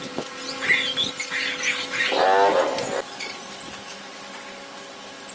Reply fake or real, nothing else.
real